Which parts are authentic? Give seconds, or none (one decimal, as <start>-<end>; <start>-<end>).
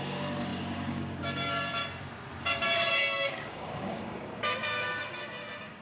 1.8-2.4